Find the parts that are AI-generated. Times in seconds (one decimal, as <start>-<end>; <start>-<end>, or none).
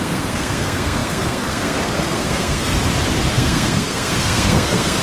0.0-2.7; 3.3-5.0